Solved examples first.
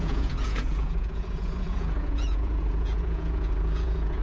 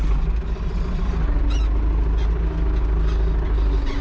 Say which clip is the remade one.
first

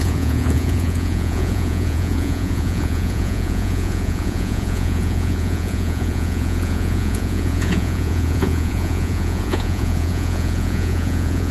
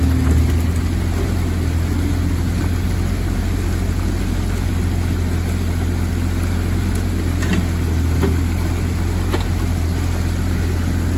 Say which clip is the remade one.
first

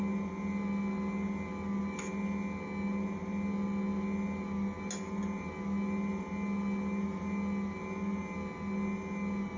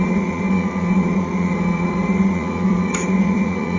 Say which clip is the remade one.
second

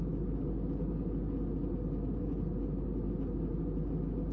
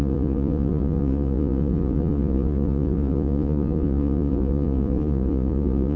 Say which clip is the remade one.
second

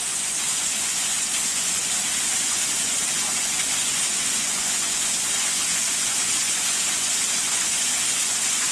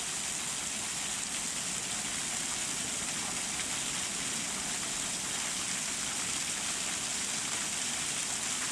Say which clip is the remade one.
first